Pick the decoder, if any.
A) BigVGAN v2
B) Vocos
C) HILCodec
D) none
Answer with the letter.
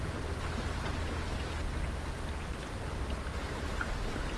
D